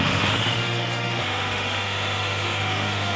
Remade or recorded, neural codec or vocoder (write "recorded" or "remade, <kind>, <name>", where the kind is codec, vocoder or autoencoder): remade, autoencoder, DAC-VAE